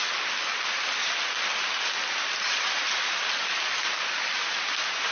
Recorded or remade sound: recorded